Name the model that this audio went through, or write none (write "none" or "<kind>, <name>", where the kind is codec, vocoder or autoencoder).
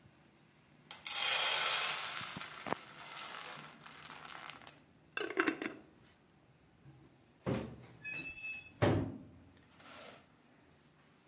none